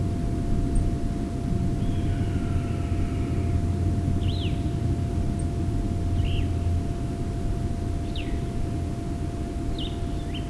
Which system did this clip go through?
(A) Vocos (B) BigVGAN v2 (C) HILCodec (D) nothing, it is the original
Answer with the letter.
D